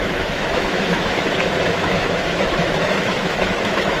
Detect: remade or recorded remade